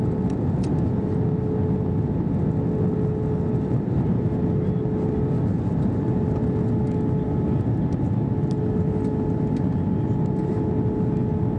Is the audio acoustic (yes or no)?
yes